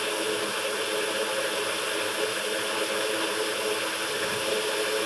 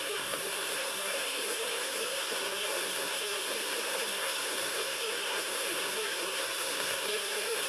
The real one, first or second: first